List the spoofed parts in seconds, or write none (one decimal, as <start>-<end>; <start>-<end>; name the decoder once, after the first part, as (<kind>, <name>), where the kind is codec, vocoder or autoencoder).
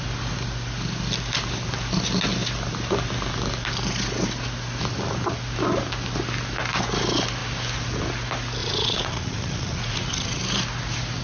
8.6-10.4 (vocoder, Vocos)